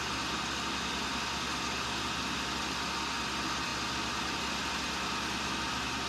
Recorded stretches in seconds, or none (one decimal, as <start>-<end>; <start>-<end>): 0.0-6.1